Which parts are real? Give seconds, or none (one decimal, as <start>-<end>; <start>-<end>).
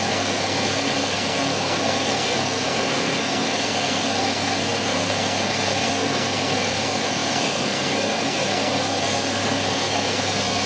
none